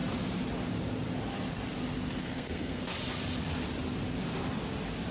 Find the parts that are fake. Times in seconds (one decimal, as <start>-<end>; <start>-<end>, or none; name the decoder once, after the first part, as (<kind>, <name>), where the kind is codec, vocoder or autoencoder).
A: 2.2-2.8 (codec, SNAC)